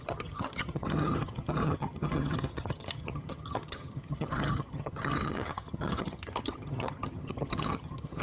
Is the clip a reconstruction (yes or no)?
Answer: yes